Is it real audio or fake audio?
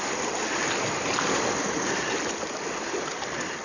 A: real